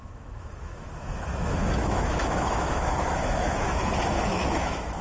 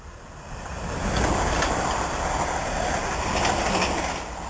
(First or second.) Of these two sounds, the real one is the second